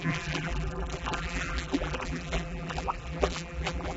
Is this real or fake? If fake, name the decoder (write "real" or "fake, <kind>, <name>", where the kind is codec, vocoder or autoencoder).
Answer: fake, vocoder, BigVGAN v2